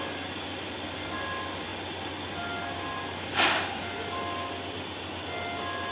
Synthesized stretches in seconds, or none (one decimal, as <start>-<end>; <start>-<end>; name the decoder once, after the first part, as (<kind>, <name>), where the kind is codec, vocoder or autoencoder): none